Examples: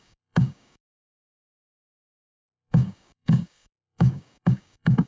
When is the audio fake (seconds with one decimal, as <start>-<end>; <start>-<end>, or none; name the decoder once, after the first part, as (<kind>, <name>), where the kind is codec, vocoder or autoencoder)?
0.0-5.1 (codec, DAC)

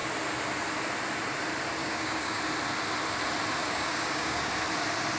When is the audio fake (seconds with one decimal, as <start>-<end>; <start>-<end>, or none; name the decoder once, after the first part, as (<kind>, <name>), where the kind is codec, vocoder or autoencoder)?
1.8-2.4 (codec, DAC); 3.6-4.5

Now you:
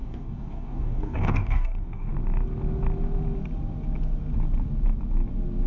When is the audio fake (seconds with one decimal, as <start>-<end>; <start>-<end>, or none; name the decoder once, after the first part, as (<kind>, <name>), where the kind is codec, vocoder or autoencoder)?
0.0-2.1 (codec, DAC)